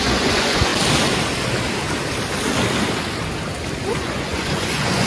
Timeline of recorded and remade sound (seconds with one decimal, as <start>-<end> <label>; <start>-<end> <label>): 0.0-0.7 remade; 0.7-3.8 recorded; 3.8-5.1 remade